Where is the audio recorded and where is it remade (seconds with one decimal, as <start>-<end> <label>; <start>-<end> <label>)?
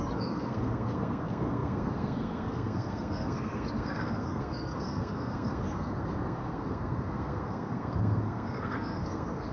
0.0-9.5 remade